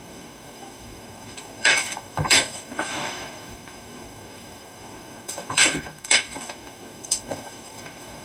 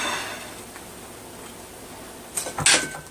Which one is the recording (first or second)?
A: second